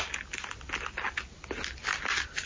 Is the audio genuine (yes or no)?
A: yes